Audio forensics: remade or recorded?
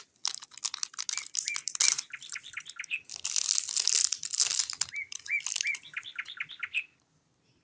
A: recorded